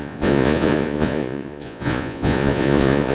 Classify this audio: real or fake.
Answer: fake